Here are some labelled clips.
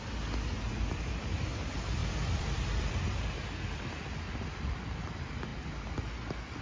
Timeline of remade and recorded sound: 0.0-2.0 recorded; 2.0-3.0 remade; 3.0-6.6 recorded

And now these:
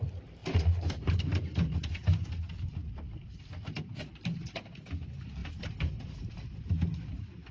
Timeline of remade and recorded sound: 0.0-0.4 recorded; 0.4-2.3 remade; 2.3-5.4 recorded; 5.4-6.6 remade; 6.6-7.5 recorded